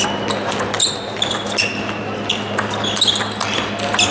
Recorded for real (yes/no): yes